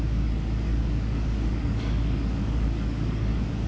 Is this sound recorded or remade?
remade